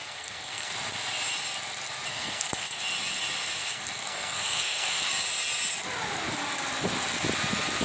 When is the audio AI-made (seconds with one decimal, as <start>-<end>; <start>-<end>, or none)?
0.0-0.7; 2.1-2.8; 3.6-5.1